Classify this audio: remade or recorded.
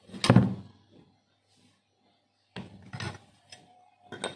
recorded